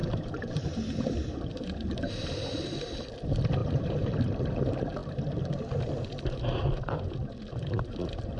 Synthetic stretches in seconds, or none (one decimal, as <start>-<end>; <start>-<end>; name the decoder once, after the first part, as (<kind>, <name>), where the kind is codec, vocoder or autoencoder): 0.0-2.1 (vocoder, BigVGAN v2); 3.6-4.4